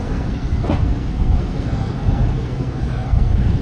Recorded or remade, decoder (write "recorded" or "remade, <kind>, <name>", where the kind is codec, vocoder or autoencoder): remade, codec, SNAC